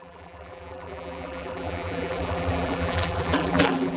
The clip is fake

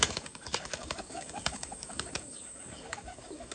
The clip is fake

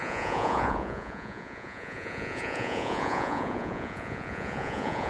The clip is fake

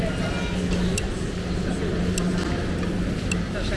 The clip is real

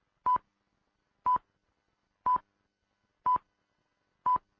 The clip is real